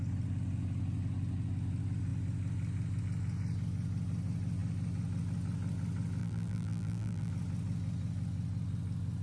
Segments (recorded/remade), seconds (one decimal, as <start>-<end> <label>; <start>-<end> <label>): 0.0-6.2 recorded; 6.2-7.3 remade; 7.3-9.2 recorded